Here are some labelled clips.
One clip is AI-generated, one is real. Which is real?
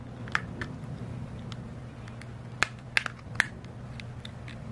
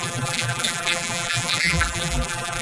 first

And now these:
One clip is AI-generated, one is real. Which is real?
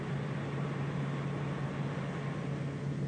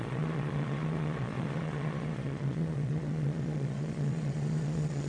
first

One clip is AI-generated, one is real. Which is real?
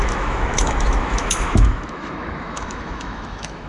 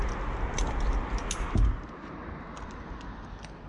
second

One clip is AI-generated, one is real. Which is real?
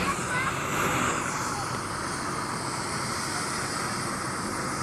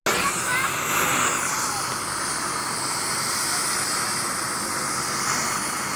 second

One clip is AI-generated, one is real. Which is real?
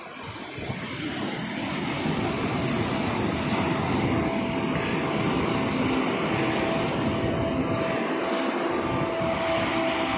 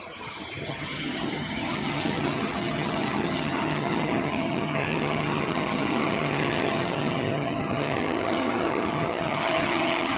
first